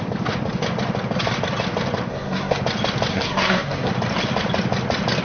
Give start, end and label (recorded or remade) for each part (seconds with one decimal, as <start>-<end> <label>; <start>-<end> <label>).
0.0-2.1 recorded; 2.1-2.6 remade; 2.6-3.1 recorded; 3.1-3.9 remade; 3.9-5.2 recorded